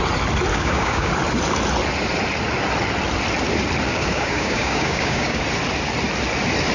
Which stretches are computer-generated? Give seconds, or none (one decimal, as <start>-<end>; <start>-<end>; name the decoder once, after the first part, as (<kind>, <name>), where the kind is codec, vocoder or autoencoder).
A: 0.5-1.1 (codec, DAC); 3.9-5.4

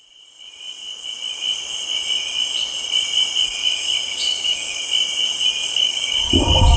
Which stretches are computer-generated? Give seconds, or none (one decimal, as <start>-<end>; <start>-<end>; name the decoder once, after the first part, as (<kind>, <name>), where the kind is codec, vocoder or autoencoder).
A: 3.6-4.8 (codec, DAC); 5.7-6.3

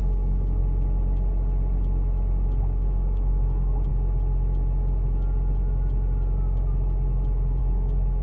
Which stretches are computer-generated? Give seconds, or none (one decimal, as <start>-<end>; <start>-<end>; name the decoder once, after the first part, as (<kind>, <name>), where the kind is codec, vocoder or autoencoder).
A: 0.0-0.6 (codec, DAC); 2.6-3.9; 7.6-8.2

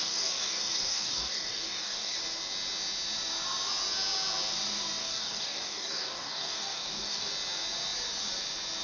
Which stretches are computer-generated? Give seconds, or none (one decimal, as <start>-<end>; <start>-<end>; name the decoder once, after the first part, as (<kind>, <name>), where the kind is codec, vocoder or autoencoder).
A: 0.0-2.2 (codec, DAC); 5.0-7.3

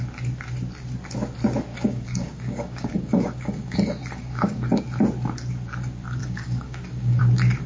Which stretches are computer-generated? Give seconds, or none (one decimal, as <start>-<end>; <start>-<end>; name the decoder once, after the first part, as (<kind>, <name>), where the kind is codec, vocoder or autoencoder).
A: 1.7-4.8 (codec, DAC); 6.2-7.2

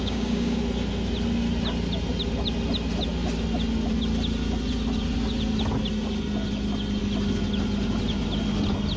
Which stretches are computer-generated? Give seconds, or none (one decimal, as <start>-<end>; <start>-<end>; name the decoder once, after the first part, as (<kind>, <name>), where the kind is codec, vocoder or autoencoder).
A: 0.0-0.6 (codec, DAC)

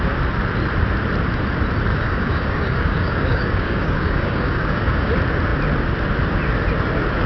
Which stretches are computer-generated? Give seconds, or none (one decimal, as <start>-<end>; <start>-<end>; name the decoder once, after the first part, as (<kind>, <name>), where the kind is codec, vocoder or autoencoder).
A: 1.9-5.1 (codec, DAC)

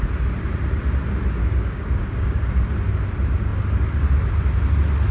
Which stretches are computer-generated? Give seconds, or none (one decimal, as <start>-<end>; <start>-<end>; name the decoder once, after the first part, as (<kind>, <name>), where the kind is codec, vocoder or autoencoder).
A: 1.4-2.4 (codec, DAC)